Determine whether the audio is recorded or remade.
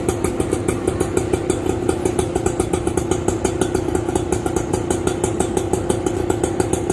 recorded